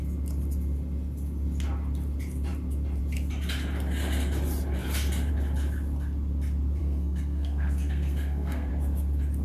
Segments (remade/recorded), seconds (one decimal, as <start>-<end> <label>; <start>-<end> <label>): 0.0-6.8 recorded; 6.8-8.7 remade; 8.7-9.4 recorded